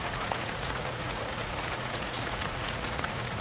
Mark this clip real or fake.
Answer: fake